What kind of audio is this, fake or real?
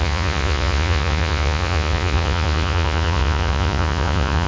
fake